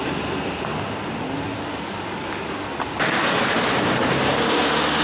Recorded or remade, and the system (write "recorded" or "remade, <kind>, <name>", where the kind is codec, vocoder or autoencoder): recorded